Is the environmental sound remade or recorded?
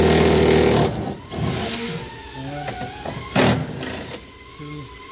recorded